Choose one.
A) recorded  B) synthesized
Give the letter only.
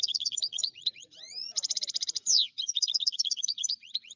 B